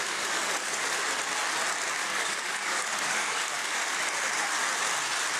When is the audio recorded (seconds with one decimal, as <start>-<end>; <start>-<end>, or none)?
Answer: 1.0-2.0; 4.0-5.4

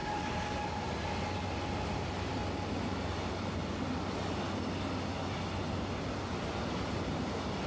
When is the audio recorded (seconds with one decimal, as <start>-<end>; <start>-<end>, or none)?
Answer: 0.6-7.7

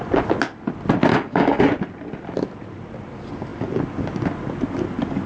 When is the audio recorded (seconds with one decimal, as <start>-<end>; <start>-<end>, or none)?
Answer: 0.0-1.1; 1.6-5.3

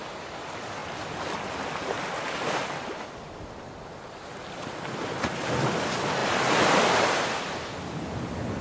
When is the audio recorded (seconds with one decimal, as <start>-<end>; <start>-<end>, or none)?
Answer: 0.0-8.6

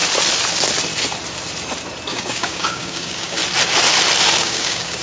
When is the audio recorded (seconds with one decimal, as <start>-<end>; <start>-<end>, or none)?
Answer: 0.0-2.1; 3.4-4.4

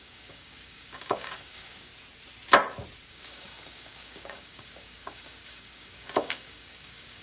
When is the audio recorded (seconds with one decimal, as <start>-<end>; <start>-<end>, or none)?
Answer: 1.9-3.1